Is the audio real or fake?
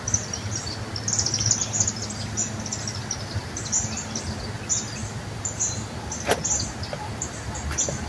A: real